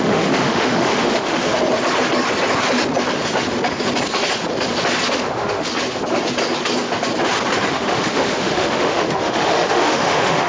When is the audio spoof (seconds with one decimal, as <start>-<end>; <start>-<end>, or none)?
0.0-1.5; 5.1-5.7; 7.7-10.5